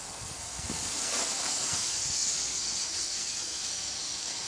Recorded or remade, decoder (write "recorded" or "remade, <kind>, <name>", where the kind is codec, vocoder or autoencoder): remade, codec, SNAC